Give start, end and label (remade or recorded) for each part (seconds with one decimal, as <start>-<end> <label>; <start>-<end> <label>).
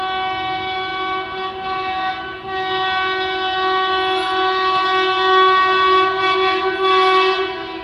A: 0.0-7.8 recorded